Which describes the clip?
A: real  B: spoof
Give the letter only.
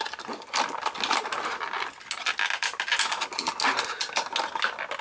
A